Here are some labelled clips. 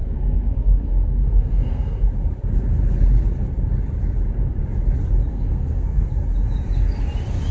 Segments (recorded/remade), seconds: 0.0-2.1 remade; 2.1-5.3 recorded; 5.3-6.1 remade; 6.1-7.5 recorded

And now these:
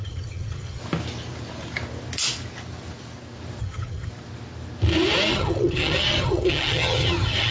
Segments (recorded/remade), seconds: 0.0-0.8 remade; 0.8-3.6 recorded; 3.6-4.1 remade; 4.1-5.3 recorded; 5.3-7.5 remade

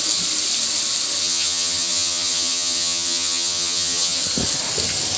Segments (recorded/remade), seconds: 0.0-1.2 recorded; 1.2-4.2 remade; 4.2-5.2 recorded

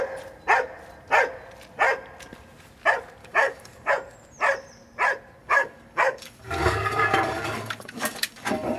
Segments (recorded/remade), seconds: 0.0-3.2 recorded; 3.2-3.9 remade; 3.9-5.4 recorded; 5.4-8.8 remade

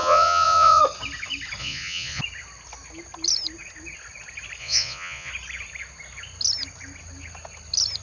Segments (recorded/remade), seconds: 0.0-0.8 remade; 0.8-1.6 recorded; 1.6-2.2 remade; 2.2-4.6 recorded; 4.6-5.3 remade; 5.3-8.0 recorded

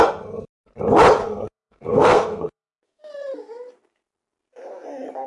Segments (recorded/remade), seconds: 0.0-1.2 recorded; 1.2-3.0 remade; 3.0-5.3 recorded